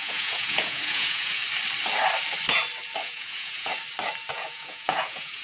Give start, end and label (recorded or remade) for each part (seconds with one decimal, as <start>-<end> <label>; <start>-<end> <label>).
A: 0.0-1.4 remade; 1.4-3.0 recorded; 3.0-3.7 remade; 3.7-4.3 recorded; 4.3-5.4 remade